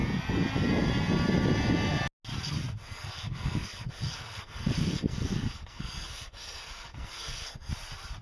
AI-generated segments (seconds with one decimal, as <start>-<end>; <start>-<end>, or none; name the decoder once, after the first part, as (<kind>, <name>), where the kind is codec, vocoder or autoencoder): 2.8-7.7 (codec, SNAC)